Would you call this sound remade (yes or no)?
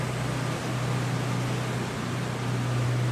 no